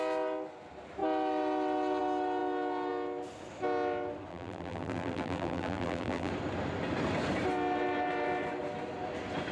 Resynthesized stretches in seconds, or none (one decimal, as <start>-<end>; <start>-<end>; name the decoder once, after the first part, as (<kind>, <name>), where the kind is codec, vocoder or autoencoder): 4.3-6.3 (vocoder, BigVGAN v2)